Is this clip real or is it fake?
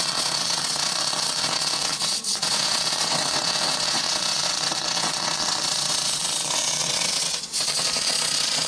fake